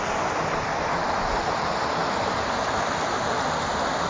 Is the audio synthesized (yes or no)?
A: no